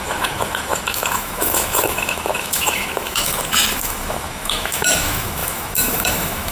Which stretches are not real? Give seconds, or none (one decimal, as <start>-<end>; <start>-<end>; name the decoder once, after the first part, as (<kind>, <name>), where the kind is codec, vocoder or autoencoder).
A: 0.0-6.5 (autoencoder, DAC-VAE)